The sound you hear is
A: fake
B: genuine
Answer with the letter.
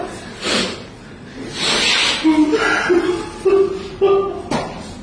B